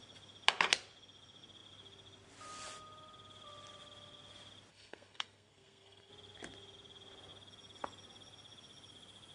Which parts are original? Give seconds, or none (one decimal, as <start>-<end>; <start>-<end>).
0.0-4.7; 6.1-9.3